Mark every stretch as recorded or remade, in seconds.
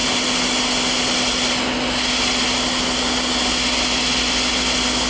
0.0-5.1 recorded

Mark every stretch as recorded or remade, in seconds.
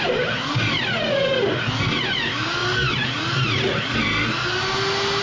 0.0-5.2 recorded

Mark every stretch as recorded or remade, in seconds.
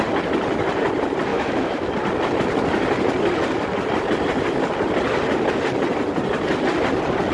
0.0-1.3 recorded; 1.3-1.9 remade; 1.9-7.3 recorded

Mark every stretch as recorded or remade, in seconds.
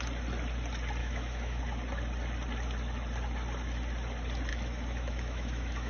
0.0-1.0 recorded; 1.0-1.6 remade; 1.6-4.5 recorded; 4.5-5.9 remade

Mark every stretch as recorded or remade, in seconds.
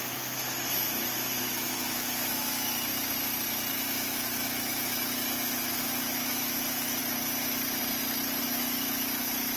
0.0-2.9 remade; 2.9-3.7 recorded; 3.7-7.0 remade; 7.0-8.4 recorded; 8.4-9.6 remade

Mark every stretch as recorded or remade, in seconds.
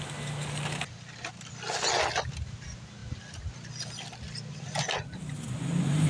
0.0-6.1 recorded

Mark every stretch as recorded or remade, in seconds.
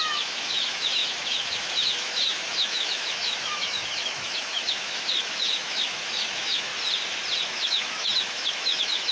0.0-6.7 remade; 6.7-7.5 recorded; 7.5-9.1 remade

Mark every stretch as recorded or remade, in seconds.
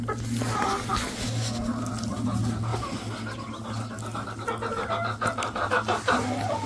0.0-6.7 recorded